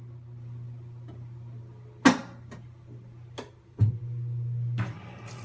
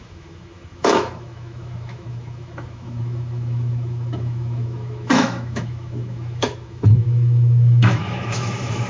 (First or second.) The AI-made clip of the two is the second